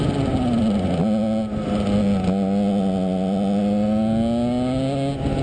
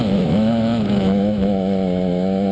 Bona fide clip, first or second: first